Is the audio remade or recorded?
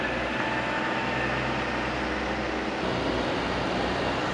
recorded